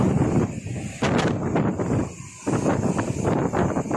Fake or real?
real